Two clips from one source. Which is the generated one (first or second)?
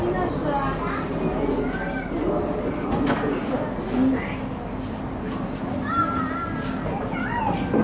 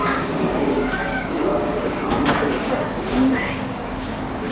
second